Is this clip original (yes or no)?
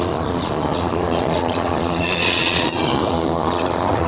no